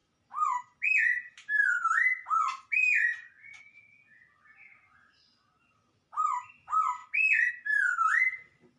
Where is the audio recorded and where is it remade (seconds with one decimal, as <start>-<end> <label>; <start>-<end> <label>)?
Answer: 0.0-2.8 recorded; 2.8-3.6 remade; 3.6-8.8 recorded